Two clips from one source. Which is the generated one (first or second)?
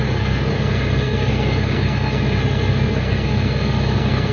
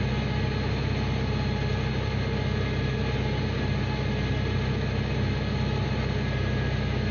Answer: first